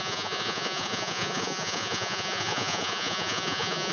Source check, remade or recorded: remade